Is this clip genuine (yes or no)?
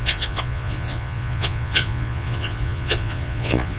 no